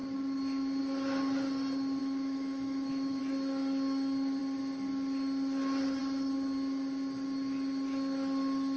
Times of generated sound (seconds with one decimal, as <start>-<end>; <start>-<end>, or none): 2.0-3.2